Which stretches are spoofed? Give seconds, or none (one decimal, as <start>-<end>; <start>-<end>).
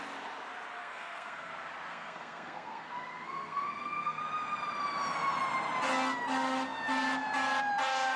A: 0.8-1.5; 1.9-4.2